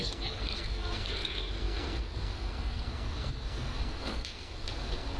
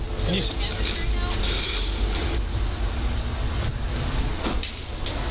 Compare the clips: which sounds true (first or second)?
second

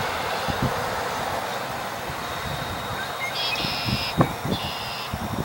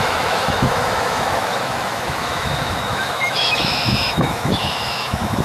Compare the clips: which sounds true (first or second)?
first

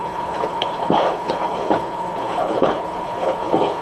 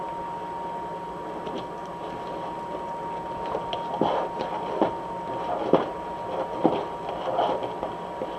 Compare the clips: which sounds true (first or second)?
second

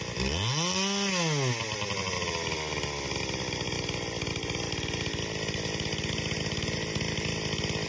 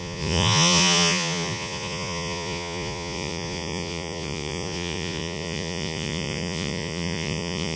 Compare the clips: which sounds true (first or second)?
first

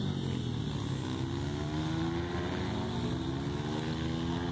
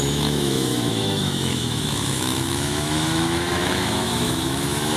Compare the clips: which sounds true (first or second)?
first